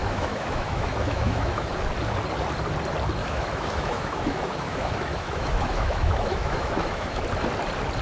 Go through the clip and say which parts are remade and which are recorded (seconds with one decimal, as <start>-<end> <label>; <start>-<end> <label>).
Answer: 0.0-1.7 remade; 1.7-3.2 recorded; 3.2-7.2 remade; 7.2-8.0 recorded